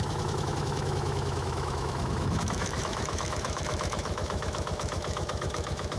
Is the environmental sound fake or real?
fake